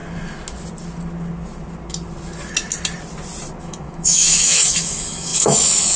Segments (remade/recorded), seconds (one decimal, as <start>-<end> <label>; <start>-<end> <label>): 0.0-3.6 recorded; 3.6-6.0 remade